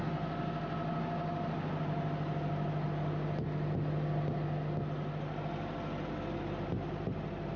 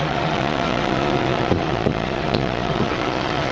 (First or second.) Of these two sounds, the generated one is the second